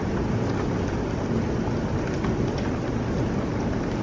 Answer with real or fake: real